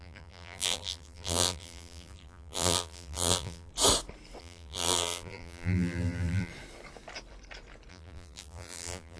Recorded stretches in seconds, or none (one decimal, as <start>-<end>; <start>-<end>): 3.7-4.4; 6.5-7.9